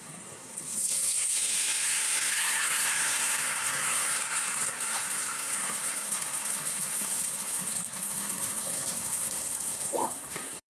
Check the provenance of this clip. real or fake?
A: fake